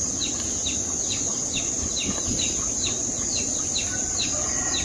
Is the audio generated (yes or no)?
no